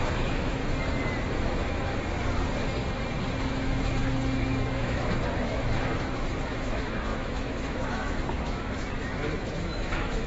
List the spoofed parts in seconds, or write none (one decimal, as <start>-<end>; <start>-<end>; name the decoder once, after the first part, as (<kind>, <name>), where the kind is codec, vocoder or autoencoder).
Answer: 0.0-0.6 (autoencoder, DAC-VAE); 1.3-1.9; 3.4-10.3